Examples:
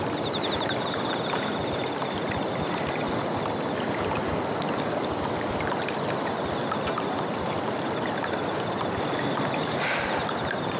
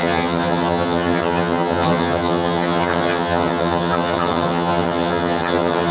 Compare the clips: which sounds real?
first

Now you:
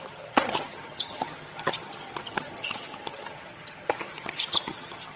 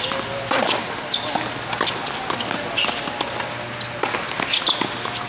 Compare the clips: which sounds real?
second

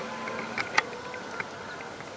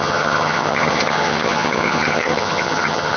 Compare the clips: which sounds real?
first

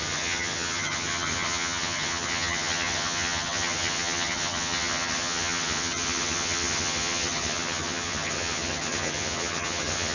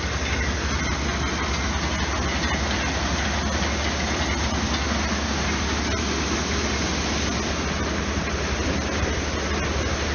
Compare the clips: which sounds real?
second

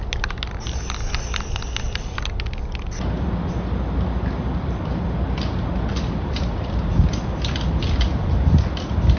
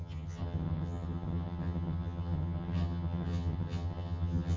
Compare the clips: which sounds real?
first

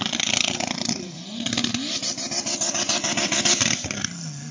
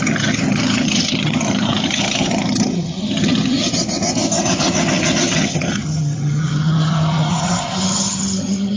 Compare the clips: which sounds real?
first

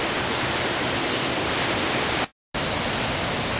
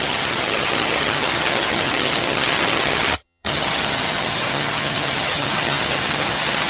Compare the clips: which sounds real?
first